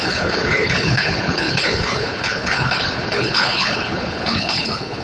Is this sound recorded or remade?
remade